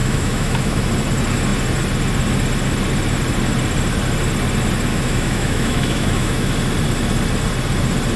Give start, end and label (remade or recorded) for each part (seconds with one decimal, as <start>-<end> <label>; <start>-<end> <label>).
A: 0.0-0.9 remade; 0.9-4.9 recorded; 4.9-6.5 remade; 6.5-8.2 recorded